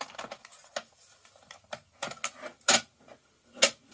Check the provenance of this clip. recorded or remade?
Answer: recorded